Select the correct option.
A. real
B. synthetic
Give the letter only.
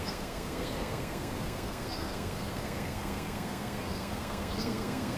B